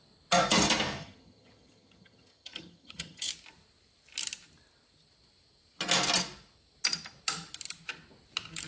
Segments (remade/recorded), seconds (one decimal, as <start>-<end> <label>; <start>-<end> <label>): 0.0-1.0 recorded; 1.0-3.3 remade; 3.3-8.7 recorded